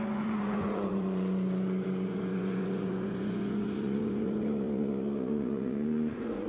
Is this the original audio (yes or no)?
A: no